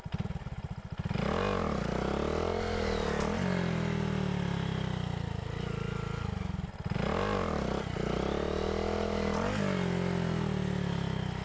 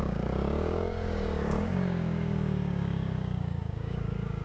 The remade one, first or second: second